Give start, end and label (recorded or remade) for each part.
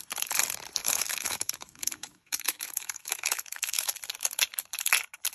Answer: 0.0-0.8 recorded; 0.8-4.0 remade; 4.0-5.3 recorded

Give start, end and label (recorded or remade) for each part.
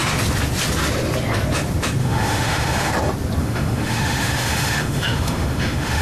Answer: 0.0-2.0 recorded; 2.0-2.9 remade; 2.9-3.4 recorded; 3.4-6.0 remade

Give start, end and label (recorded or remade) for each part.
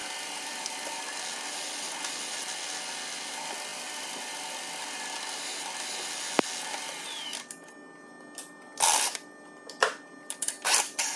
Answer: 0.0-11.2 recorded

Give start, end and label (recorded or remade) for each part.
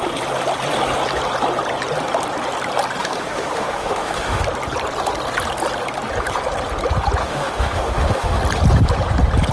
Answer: 0.0-3.0 recorded; 3.0-4.4 remade; 4.4-7.2 recorded; 7.2-8.4 remade; 8.4-9.5 recorded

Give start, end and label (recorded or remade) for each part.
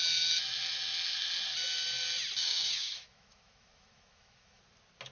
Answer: 0.0-2.4 recorded; 2.4-4.6 remade; 4.6-5.1 recorded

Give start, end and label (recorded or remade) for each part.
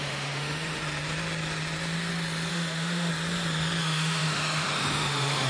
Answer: 0.0-0.8 remade; 0.8-2.5 recorded; 2.5-3.1 remade; 3.1-3.8 recorded; 3.8-5.5 remade